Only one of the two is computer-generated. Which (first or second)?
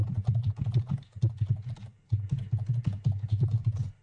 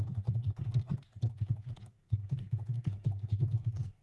second